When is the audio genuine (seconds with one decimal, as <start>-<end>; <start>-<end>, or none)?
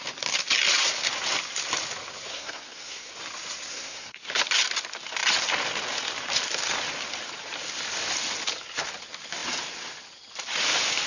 0.0-2.3; 3.1-3.7; 4.3-11.1